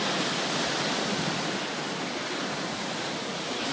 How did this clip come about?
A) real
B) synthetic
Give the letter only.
A